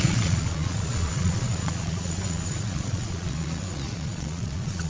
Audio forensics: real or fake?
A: fake